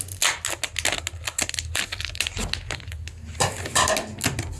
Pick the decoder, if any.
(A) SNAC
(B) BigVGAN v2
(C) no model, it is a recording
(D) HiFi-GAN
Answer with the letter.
C